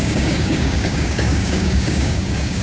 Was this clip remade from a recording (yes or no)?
yes